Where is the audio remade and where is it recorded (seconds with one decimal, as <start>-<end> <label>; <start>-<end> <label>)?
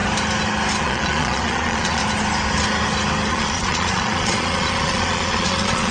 0.0-0.8 recorded; 0.8-2.0 remade; 2.0-3.3 recorded; 3.3-5.9 remade